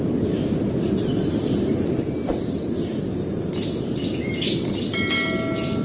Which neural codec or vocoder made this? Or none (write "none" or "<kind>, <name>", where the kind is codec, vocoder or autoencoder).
none